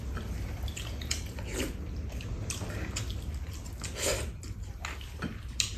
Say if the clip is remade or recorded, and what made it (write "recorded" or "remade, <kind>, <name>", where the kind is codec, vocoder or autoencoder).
recorded